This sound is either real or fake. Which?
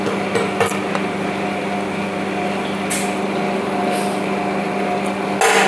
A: real